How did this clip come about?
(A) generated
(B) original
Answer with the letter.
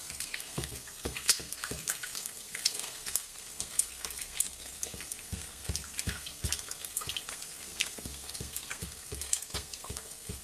A